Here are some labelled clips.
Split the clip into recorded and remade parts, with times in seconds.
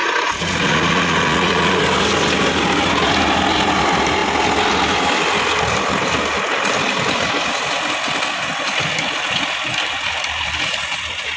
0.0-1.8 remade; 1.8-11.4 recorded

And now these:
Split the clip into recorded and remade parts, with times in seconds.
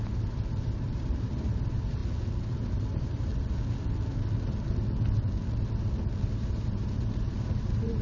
0.0-2.0 remade; 2.0-2.6 recorded; 2.6-3.3 remade; 3.3-6.3 recorded; 6.3-8.0 remade